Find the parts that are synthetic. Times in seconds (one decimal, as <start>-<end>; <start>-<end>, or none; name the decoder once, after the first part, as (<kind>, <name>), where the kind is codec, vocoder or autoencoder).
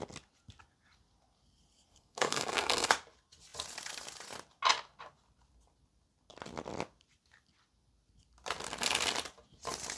1.9-2.9 (codec, SNAC)